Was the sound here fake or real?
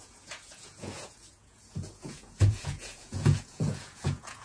fake